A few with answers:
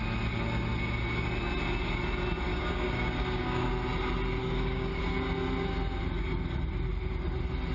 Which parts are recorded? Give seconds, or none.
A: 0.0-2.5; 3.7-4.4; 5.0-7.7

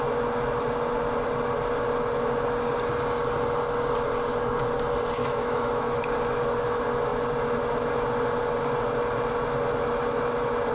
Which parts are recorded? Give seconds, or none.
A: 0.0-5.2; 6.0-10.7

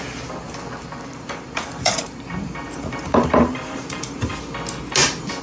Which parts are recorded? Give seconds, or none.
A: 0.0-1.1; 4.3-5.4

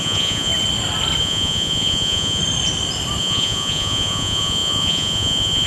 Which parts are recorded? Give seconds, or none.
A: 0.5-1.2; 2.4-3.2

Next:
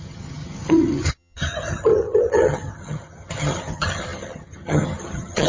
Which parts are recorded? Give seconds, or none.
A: none